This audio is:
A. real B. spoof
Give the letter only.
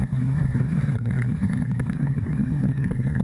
B